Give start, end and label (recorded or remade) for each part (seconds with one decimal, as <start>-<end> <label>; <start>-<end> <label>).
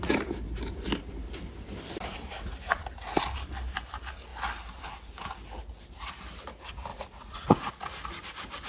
0.0-6.9 recorded; 6.9-7.7 remade; 7.7-8.7 recorded